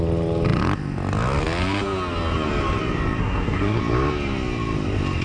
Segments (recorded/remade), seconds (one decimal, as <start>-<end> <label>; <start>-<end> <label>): 0.0-3.2 recorded; 3.2-3.8 remade; 3.8-5.2 recorded